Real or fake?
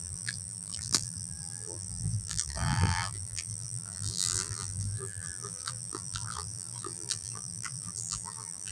fake